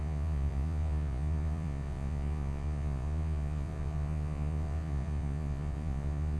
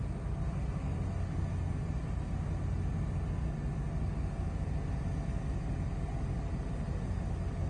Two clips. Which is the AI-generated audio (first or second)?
first